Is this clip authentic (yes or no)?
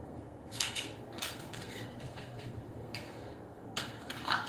no